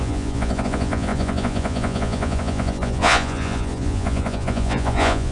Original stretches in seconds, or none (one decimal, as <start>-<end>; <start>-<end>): none